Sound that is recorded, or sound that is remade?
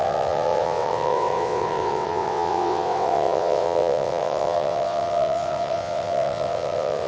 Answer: remade